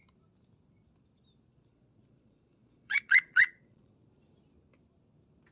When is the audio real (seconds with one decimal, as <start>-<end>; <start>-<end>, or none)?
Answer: 0.0-1.5; 3.9-5.5

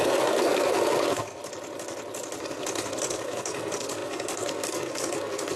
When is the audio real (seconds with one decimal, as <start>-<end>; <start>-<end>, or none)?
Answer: 1.4-2.4

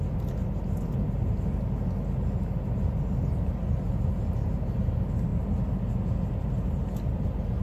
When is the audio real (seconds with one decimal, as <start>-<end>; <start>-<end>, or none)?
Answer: 0.0-7.6

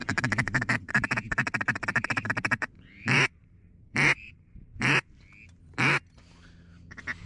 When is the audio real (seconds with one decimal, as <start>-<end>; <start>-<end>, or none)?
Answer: 0.9-1.9; 5.2-7.3

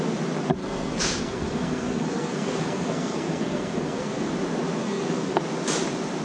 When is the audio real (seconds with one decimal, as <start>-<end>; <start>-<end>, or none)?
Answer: 0.0-0.6; 4.3-4.8; 5.4-6.2

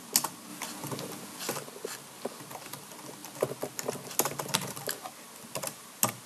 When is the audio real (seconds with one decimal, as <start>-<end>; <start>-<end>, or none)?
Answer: 0.0-6.3